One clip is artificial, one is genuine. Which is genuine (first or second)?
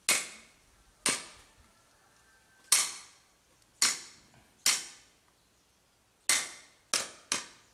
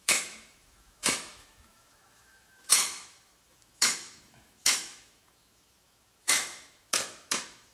first